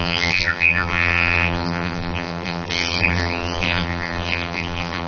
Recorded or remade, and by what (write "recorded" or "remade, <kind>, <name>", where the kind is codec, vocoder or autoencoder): remade, vocoder, BigVGAN v2